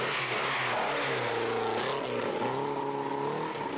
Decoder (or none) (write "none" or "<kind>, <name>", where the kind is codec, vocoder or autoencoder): none